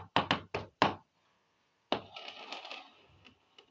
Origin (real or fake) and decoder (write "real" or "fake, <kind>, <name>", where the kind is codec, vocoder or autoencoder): real